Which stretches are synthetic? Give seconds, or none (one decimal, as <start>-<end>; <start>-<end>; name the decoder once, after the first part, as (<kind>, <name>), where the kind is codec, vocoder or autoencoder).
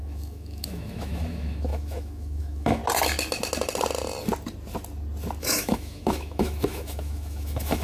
0.0-2.8 (autoencoder, DAC-VAE); 5.4-7.8